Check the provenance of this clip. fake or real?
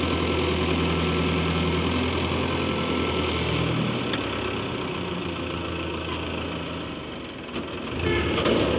real